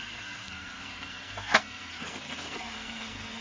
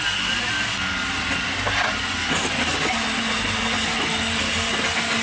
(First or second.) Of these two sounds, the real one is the second